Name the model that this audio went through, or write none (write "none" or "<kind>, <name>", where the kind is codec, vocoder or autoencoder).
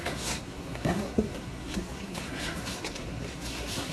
codec, SNAC